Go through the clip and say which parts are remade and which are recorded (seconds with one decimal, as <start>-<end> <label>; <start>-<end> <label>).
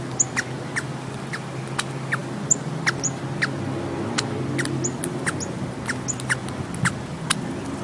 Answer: 0.0-7.8 recorded